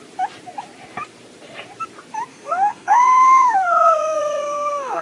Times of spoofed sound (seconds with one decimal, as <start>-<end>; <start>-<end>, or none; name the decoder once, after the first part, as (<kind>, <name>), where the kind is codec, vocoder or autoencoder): 2.3-5.0 (codec, SNAC)